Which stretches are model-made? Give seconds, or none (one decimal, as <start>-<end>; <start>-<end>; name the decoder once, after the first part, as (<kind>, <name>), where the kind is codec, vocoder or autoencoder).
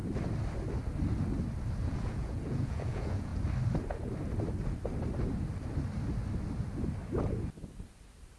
1.8-3.3 (vocoder, Vocos)